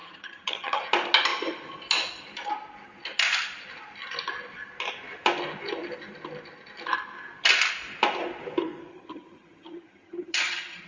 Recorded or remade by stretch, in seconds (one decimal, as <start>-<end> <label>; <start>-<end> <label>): 0.0-0.8 remade; 0.8-8.9 recorded; 8.9-10.9 remade